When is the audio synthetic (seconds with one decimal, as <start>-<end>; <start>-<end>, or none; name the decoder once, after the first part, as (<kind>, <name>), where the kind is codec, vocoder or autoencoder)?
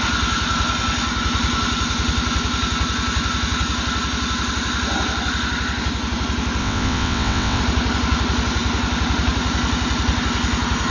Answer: 6.6-7.6 (vocoder, WaveNeXt)